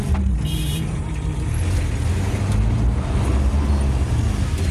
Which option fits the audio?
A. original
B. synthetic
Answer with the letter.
A